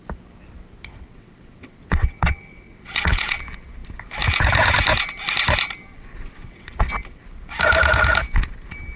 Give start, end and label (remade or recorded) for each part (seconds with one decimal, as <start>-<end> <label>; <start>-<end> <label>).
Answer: 0.0-0.7 recorded; 0.7-3.4 remade; 3.4-6.1 recorded; 6.1-6.9 remade; 6.9-9.0 recorded